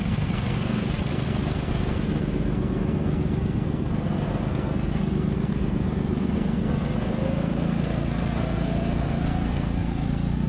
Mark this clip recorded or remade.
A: remade